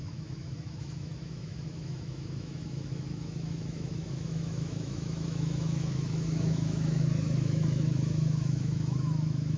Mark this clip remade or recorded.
remade